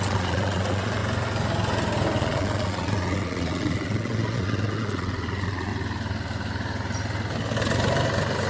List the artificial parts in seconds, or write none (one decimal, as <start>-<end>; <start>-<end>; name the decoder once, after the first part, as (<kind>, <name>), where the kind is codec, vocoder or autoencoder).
0.0-1.0 (vocoder, Vocos); 2.2-5.7